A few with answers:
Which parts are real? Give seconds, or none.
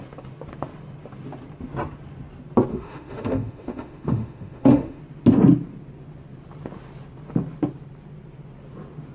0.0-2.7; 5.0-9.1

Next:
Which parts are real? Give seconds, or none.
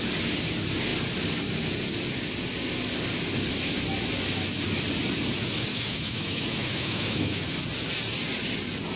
0.0-5.7; 7.5-9.0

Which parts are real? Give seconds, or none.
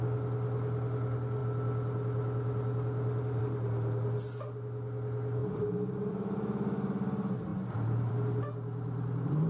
0.0-9.5